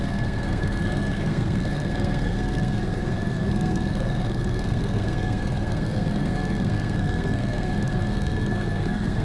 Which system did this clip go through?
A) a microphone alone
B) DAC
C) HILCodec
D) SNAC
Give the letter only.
D